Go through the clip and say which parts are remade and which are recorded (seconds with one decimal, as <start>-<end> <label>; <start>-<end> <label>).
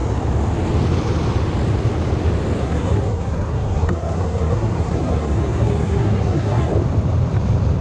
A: 0.0-2.6 recorded; 2.6-6.7 remade; 6.7-7.8 recorded